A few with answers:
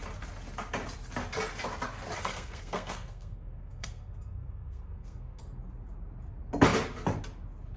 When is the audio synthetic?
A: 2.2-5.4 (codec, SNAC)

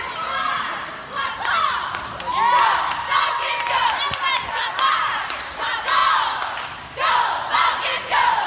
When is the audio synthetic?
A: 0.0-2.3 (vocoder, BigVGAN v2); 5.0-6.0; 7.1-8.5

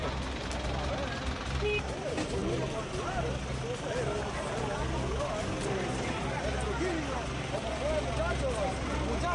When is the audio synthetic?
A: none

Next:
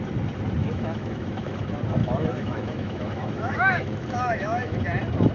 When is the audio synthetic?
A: 0.6-1.6 (autoencoder, DAC-VAE); 2.0-4.8

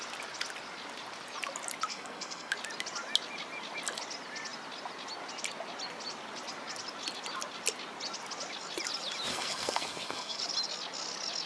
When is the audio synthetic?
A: 1.9-2.5 (codec, SNAC); 9.3-10.4

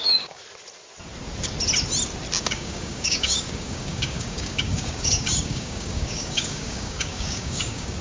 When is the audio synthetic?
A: 0.0-0.4 (codec, DAC); 2.4-8.0